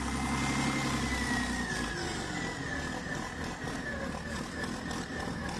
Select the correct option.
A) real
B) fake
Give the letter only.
A